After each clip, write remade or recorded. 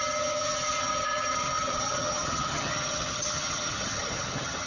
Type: remade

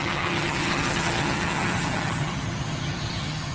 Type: remade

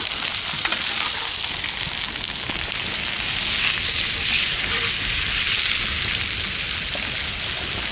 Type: recorded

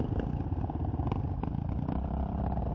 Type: recorded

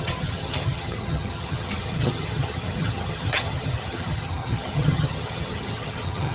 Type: remade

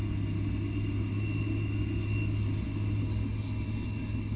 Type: recorded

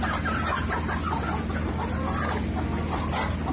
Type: recorded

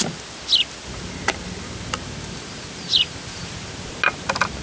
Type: recorded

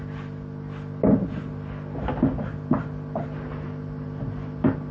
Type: recorded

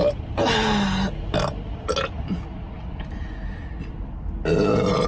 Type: recorded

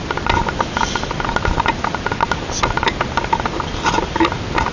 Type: recorded